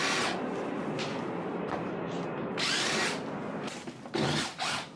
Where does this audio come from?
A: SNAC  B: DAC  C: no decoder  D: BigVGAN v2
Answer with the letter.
C